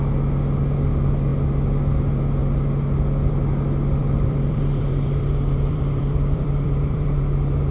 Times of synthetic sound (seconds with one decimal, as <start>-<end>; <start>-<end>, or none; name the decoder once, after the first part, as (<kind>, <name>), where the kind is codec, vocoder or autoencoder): 4.0-7.2 (vocoder, BigVGAN v2)